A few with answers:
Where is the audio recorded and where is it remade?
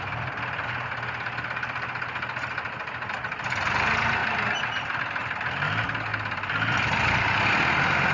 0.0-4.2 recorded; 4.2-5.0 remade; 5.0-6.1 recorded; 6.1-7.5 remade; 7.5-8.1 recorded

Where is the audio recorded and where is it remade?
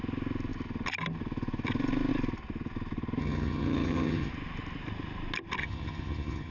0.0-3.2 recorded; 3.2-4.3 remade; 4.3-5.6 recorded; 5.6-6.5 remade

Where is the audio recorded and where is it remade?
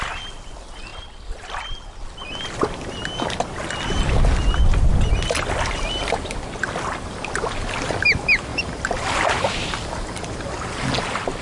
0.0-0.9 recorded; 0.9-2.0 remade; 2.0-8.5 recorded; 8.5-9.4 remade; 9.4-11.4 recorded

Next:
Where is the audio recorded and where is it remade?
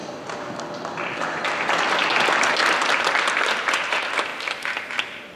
0.0-5.4 recorded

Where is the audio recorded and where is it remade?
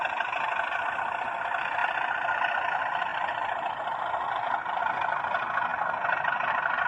0.0-6.9 recorded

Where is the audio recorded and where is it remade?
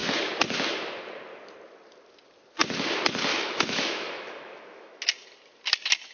0.0-3.3 recorded; 3.3-5.0 remade; 5.0-6.1 recorded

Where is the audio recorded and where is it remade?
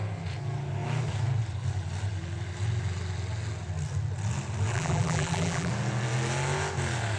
0.0-4.7 recorded; 4.7-5.7 remade; 5.7-7.2 recorded